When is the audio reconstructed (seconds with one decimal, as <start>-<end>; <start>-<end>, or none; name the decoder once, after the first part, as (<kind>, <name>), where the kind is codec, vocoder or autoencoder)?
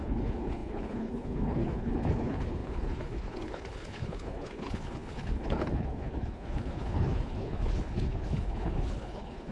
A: 0.0-9.5 (codec, HILCodec)